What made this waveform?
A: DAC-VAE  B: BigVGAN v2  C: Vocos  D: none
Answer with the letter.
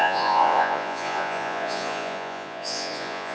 C